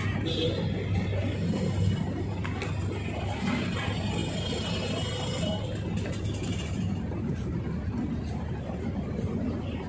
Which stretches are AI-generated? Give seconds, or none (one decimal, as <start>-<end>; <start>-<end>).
none